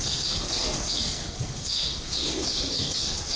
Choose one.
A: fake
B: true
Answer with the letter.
A